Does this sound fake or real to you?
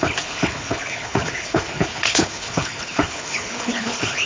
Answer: fake